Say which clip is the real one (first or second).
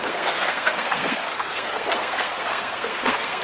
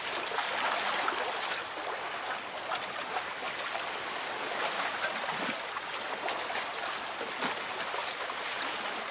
second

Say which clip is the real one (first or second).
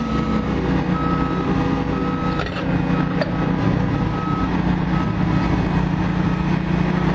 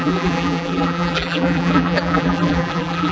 first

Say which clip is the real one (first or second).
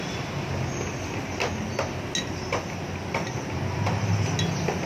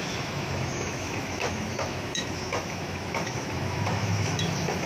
first